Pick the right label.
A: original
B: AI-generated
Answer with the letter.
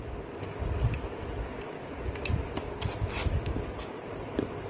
A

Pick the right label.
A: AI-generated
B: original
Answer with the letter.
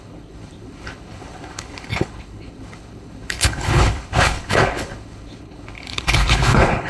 A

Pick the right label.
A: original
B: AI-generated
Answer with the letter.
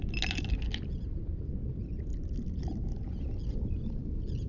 A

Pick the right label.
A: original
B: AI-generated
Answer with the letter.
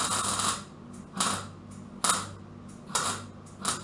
A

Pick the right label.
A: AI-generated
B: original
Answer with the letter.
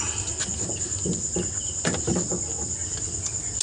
B